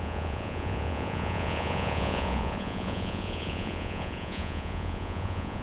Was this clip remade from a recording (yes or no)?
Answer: yes